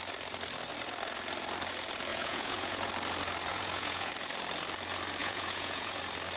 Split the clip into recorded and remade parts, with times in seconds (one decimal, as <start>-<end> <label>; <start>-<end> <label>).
0.0-2.1 recorded; 2.1-2.9 remade; 2.9-3.5 recorded; 3.5-4.1 remade; 4.1-5.2 recorded; 5.2-6.0 remade; 6.0-6.4 recorded